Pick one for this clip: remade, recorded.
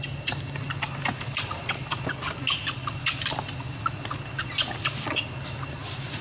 recorded